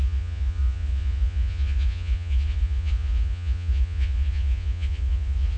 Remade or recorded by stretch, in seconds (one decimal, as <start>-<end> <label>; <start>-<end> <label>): 0.0-5.6 remade

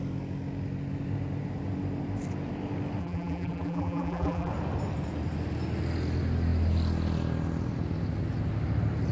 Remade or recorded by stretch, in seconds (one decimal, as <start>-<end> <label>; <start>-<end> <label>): 0.0-3.0 recorded; 3.0-4.5 remade; 4.5-9.1 recorded

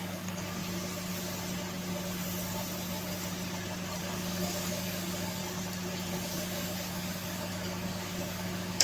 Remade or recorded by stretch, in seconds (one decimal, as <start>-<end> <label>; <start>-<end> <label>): 0.0-0.6 remade; 0.6-4.0 recorded; 4.0-5.4 remade; 5.4-6.1 recorded; 6.1-8.8 remade

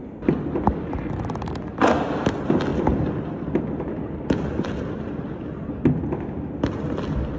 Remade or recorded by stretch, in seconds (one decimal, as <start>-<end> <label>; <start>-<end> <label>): 0.0-7.4 recorded

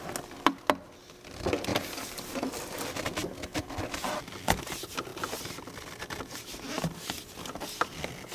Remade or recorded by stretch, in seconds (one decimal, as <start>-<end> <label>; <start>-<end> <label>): 0.0-8.3 recorded

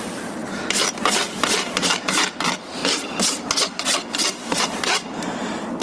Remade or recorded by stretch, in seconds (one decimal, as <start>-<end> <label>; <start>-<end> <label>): 0.0-0.4 remade; 0.4-2.1 recorded; 2.1-2.8 remade; 2.8-3.6 recorded; 3.6-5.8 remade

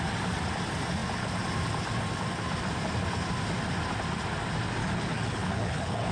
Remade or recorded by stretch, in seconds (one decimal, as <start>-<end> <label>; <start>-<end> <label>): 0.0-4.8 recorded; 4.8-6.1 remade

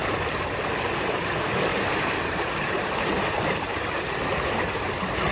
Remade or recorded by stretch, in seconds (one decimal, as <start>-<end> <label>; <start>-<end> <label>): 0.0-0.7 remade; 0.7-1.7 recorded; 1.7-5.3 remade